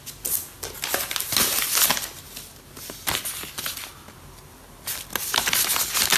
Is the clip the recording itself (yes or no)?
yes